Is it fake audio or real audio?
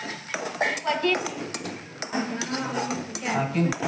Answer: real